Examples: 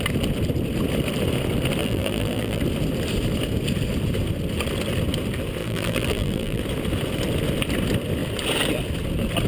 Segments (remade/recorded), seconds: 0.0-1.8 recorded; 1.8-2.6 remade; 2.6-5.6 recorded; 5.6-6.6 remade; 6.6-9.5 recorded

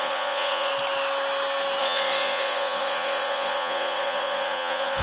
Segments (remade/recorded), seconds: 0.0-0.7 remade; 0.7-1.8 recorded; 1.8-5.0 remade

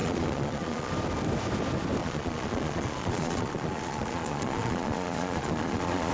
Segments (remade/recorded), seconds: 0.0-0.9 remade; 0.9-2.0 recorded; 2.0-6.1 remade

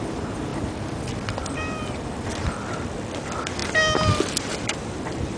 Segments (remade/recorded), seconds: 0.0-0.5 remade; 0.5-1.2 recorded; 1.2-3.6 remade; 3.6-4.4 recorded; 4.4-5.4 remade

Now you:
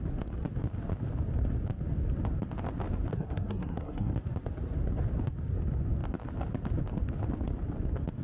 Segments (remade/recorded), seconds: 0.0-3.1 recorded; 3.1-4.1 remade; 4.1-8.2 recorded

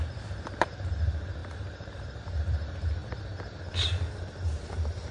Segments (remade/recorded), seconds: 0.0-1.4 recorded; 1.4-2.2 remade; 2.2-5.1 recorded

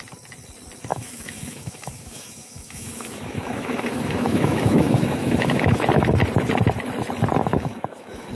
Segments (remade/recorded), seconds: 0.0-0.9 recorded; 0.9-5.9 remade; 5.9-7.4 recorded; 7.4-8.3 remade